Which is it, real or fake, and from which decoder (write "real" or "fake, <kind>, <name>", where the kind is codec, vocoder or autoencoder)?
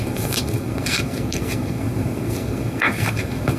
fake, codec, SNAC